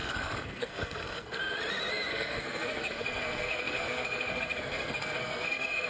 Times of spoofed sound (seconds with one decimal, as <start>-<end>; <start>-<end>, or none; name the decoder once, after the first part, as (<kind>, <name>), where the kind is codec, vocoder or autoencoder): 0.0-1.4 (codec, SNAC); 2.1-5.9